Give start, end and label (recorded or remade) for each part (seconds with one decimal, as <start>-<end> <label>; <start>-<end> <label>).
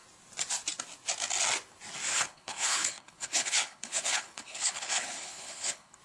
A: 0.0-2.1 recorded; 2.1-6.0 remade